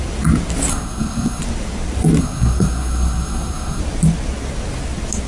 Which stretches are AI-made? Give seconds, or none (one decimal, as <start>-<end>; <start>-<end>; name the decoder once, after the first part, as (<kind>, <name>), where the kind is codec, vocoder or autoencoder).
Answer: 0.7-1.4 (codec, SNAC); 2.2-3.8